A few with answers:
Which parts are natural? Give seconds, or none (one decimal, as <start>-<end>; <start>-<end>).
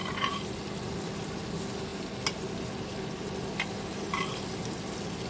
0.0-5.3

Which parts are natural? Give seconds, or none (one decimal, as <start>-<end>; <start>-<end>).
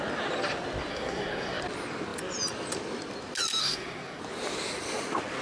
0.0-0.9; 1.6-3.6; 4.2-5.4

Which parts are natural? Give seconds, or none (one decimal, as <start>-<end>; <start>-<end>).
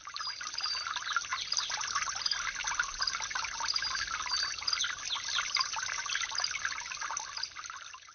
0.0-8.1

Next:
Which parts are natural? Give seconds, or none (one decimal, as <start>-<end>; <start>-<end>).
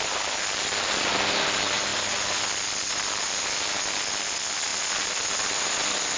0.0-6.2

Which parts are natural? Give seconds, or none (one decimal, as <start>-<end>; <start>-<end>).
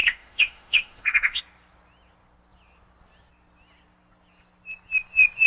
1.4-5.5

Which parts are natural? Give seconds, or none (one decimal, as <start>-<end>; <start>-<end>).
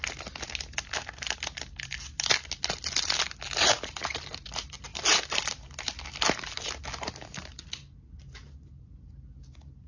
0.0-9.9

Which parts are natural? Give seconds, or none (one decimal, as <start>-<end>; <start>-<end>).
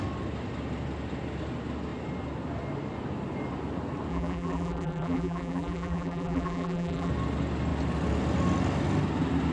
0.0-4.1; 7.1-9.5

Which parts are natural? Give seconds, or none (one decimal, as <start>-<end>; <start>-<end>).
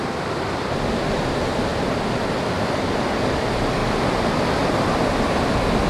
0.0-5.9